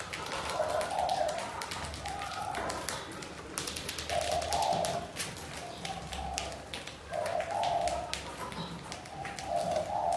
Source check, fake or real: real